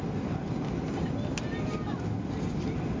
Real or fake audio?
real